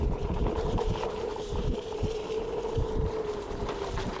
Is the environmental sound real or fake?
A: fake